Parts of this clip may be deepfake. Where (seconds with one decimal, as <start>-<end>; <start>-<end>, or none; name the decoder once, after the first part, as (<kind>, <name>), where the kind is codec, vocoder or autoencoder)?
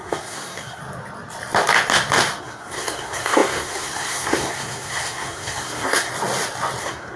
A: 0.0-0.8 (codec, SNAC); 2.4-6.1; 6.8-7.2